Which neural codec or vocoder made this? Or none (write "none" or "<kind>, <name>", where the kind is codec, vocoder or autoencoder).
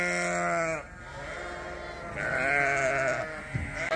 none